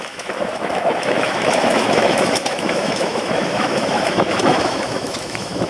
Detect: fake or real fake